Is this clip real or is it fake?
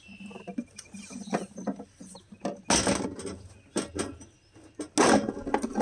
real